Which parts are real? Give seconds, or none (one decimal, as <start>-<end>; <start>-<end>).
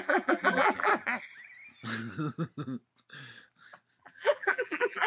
0.9-4.0